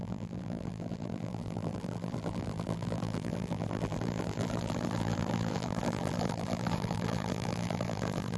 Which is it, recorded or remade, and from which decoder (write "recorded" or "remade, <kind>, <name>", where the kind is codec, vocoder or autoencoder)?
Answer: remade, vocoder, BigVGAN v2